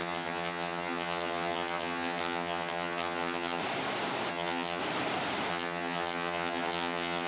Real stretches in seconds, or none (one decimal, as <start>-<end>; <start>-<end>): 3.6-4.3; 4.8-5.5